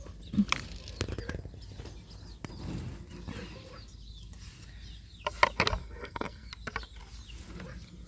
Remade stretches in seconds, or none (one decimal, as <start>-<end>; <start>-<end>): 5.8-6.5